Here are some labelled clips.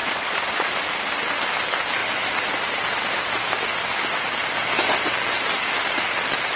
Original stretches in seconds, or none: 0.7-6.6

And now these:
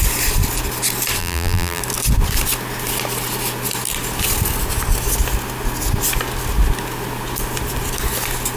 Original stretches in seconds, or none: 0.0-1.2; 1.8-8.6

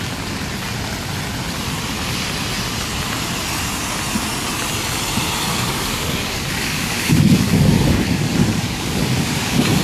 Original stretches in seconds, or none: 0.0-5.5

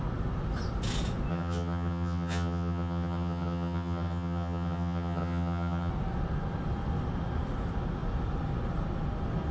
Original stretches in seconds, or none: 0.0-1.3; 5.9-9.5

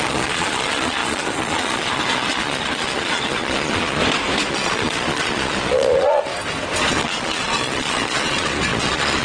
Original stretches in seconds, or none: 4.0-4.5; 6.3-6.9

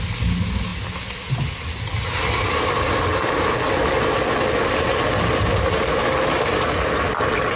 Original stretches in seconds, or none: 0.0-7.6